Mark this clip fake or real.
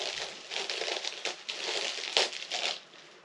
real